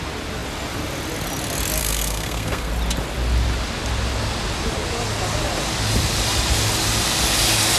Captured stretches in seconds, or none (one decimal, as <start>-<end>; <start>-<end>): 0.0-1.8; 2.7-7.8